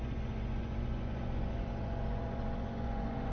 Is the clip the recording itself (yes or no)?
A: no